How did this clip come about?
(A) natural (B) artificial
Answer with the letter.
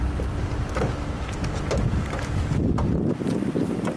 A